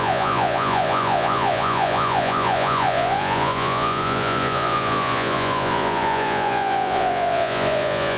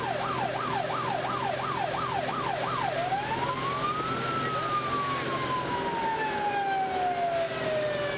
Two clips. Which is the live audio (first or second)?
second